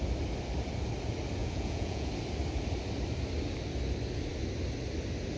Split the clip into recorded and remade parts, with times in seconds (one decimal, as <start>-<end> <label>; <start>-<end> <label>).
0.0-1.4 recorded; 1.4-2.1 remade; 2.1-5.4 recorded